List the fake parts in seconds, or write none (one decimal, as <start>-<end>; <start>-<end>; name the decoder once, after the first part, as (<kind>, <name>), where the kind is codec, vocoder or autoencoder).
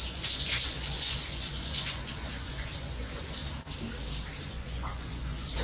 0.0-3.4 (vocoder, Vocos); 4.5-5.6